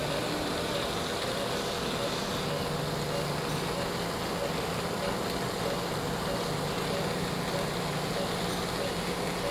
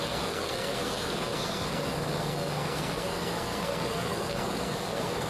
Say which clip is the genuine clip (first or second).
first